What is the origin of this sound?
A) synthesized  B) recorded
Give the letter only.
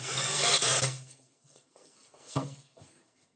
A